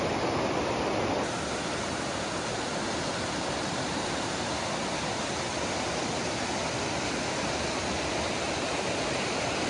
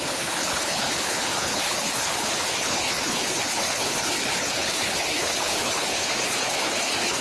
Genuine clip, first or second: first